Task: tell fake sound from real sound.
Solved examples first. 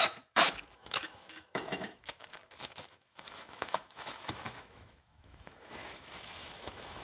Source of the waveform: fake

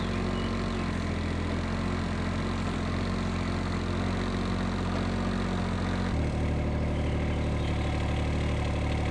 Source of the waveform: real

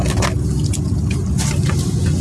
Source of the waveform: real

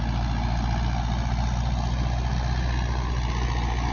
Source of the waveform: real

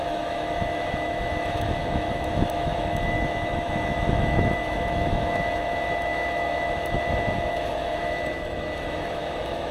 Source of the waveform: fake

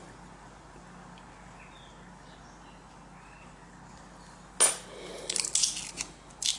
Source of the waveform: real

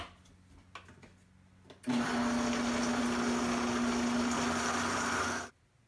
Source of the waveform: real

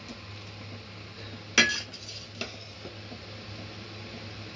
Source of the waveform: real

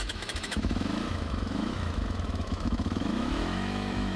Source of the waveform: fake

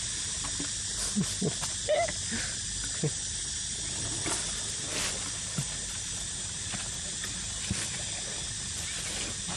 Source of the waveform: real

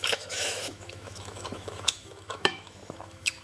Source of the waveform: fake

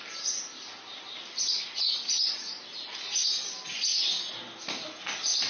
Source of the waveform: real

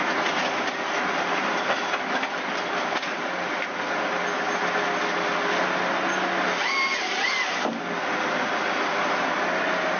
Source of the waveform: real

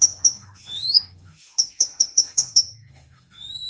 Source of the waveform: fake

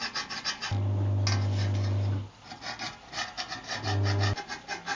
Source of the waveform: real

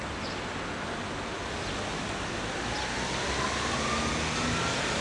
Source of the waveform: real